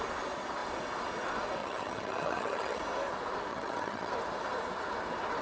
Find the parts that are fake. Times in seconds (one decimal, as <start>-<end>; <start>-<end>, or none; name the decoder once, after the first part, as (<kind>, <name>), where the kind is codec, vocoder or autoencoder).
1.6-2.8 (vocoder, HiFi-GAN); 3.5-4.1